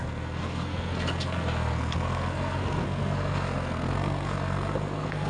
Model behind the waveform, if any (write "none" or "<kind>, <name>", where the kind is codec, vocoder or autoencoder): codec, SNAC